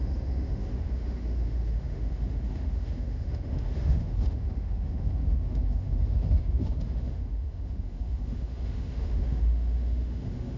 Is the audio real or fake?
fake